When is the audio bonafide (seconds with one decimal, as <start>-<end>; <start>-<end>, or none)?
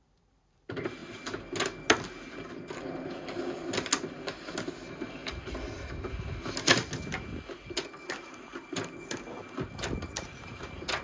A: 0.0-11.0